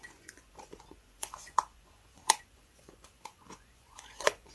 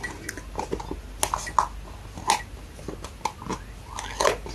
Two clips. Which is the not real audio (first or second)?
first